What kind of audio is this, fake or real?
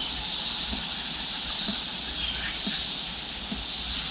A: real